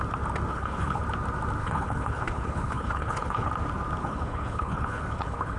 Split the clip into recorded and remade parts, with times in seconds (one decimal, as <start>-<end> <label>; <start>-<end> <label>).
0.0-0.5 recorded; 0.5-1.0 remade; 1.0-1.6 recorded; 1.6-3.5 remade; 3.5-4.0 recorded; 4.0-5.6 remade